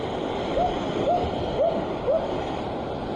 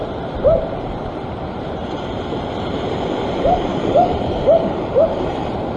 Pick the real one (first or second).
first